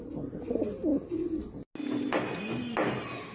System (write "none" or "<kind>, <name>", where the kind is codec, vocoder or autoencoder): none